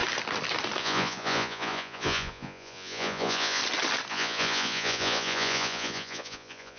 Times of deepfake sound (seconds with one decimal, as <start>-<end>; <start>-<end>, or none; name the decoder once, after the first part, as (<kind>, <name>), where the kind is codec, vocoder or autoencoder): 0.8-3.6 (vocoder, Vocos); 4.1-6.8